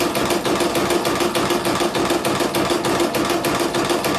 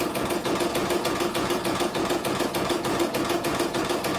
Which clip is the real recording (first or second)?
first